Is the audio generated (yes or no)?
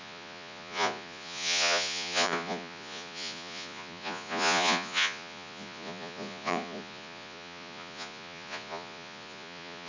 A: yes